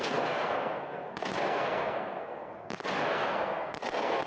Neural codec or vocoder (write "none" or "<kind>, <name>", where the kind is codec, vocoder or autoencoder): codec, SNAC